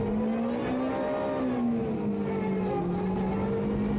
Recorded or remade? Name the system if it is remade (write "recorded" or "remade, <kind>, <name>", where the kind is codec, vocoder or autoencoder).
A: recorded